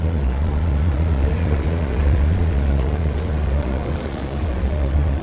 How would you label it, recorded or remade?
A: remade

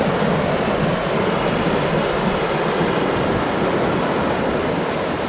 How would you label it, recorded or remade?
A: recorded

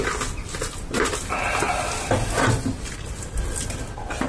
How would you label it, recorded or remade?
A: recorded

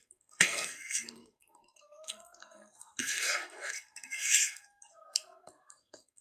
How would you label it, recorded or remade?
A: remade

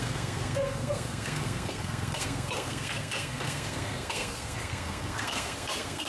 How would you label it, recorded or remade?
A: remade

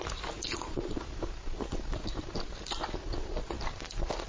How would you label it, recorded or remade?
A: recorded